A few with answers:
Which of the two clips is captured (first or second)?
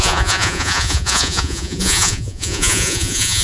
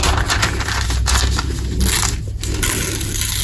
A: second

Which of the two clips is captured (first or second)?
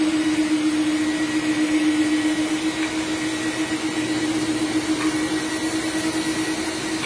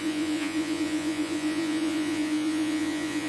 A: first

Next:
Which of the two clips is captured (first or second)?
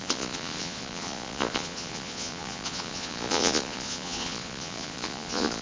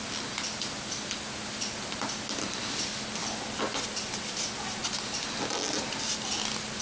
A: second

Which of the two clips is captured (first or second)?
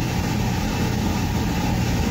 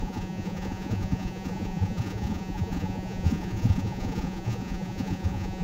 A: first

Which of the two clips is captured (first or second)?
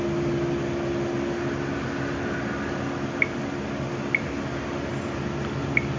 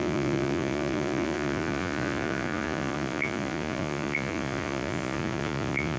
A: first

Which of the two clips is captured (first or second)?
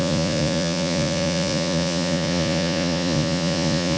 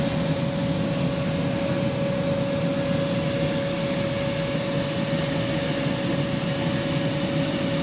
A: second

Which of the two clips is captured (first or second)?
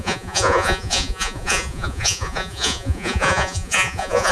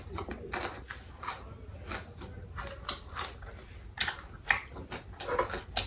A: second